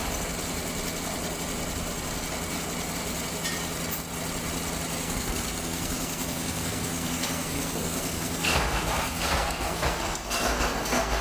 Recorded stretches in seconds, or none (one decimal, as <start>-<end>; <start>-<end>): 0.0-5.0